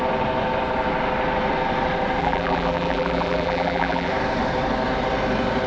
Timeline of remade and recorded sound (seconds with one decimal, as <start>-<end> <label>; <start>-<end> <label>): 0.0-2.2 recorded; 2.2-4.1 remade; 4.1-5.7 recorded